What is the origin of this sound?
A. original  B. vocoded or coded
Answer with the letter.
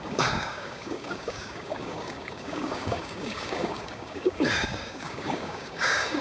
B